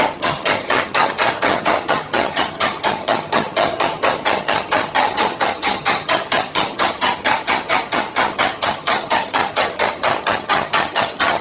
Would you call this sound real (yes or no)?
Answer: no